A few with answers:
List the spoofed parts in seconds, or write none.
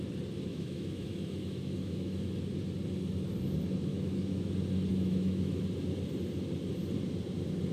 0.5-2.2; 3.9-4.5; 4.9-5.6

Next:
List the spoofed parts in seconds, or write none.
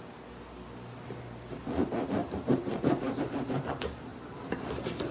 2.2-3.2; 4.1-5.1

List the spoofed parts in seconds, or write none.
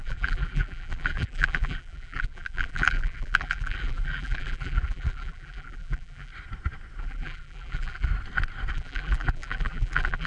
0.0-6.3; 7.0-8.1; 8.7-10.3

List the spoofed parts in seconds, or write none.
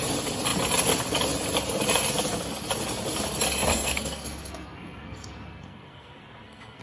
3.7-6.8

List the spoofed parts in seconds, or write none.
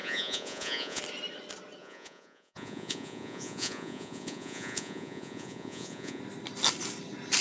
0.0-1.0; 1.8-6.2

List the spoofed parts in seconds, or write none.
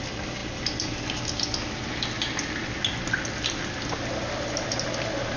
none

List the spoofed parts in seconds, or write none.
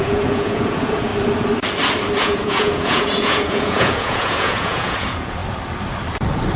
0.0-1.1; 2.2-5.4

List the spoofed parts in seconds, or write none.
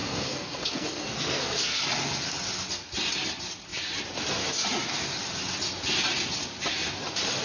0.0-1.8